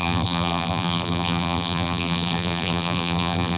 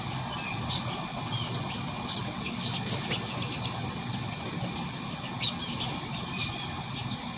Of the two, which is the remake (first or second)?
first